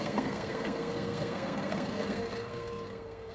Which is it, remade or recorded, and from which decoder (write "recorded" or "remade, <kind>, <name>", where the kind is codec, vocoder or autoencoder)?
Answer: remade, codec, SNAC